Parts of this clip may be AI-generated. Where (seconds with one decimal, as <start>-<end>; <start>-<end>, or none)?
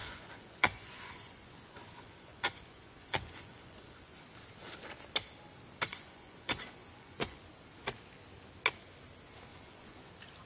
0.0-4.2; 5.9-7.5; 9.5-10.1